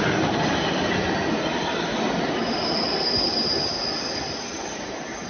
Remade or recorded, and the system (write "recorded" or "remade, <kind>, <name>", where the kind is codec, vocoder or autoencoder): recorded